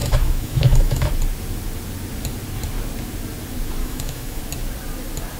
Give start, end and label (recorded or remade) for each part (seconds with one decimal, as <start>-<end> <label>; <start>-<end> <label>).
0.0-1.1 remade; 1.1-3.8 recorded; 3.8-4.4 remade; 4.4-5.4 recorded